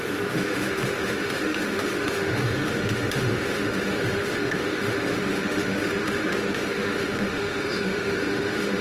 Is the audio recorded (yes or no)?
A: no